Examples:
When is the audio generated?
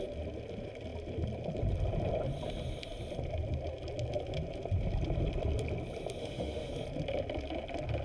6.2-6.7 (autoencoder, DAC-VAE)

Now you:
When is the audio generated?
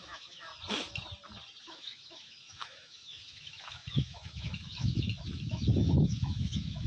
0.0-0.5 (autoencoder, DAC-VAE); 1.6-6.9